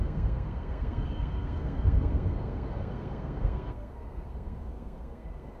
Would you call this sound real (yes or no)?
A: no